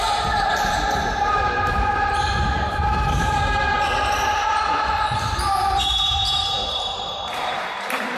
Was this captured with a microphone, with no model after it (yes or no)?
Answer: no